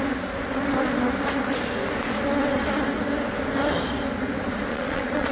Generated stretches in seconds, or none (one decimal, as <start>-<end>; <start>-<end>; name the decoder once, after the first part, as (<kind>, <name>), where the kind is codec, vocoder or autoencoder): 4.7-5.3 (vocoder, Vocos)